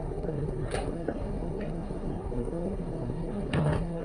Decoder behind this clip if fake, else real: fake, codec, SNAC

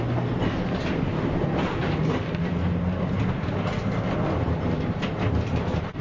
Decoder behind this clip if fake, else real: real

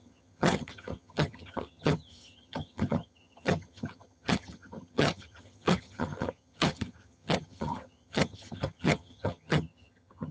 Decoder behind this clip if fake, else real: fake, vocoder, HiFi-GAN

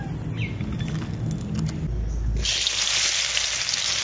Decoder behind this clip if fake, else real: real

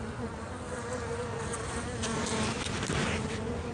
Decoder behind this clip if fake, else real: real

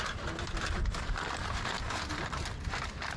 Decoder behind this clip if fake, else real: fake, vocoder, BigVGAN v2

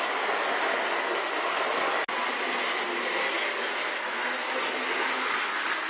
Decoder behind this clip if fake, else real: real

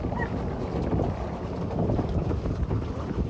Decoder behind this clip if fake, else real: real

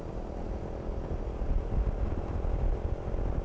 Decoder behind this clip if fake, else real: real